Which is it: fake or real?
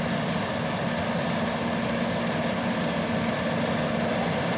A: real